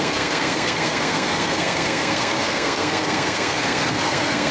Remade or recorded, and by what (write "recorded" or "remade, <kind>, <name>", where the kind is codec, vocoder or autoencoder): remade, codec, SNAC